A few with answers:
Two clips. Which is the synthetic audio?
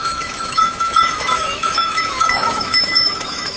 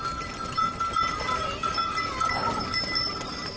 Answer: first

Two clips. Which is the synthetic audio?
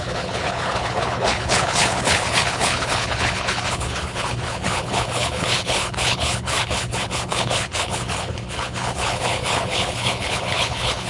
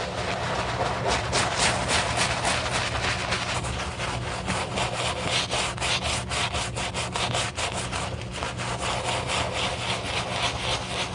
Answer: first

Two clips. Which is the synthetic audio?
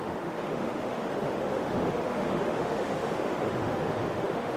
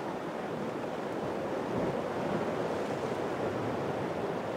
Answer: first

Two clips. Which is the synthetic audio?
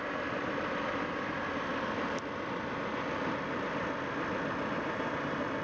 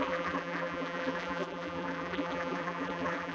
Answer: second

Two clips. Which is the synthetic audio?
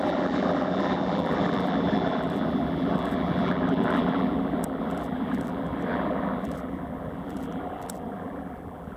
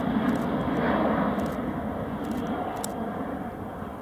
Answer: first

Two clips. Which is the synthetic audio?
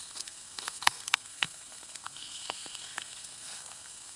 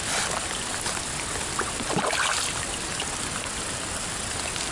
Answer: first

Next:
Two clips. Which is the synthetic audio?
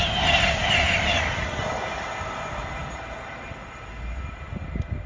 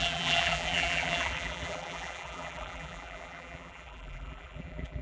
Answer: second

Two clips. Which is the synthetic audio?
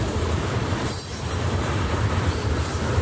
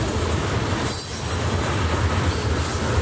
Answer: first